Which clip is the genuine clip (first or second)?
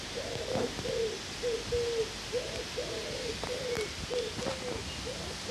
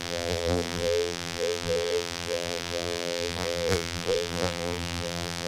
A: first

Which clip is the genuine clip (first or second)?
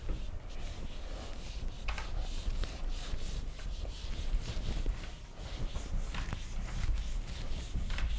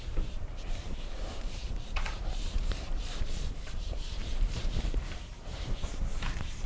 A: first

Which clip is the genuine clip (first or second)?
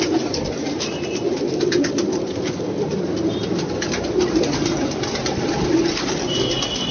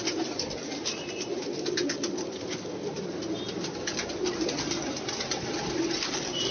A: second